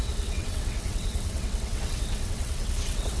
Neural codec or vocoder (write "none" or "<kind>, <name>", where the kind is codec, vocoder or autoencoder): vocoder, WaveNeXt